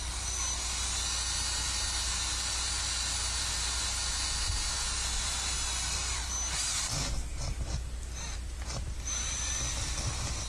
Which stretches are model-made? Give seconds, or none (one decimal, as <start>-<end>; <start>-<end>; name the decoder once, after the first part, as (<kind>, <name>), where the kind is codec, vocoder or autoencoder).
8.3-10.1 (vocoder, BigVGAN v2)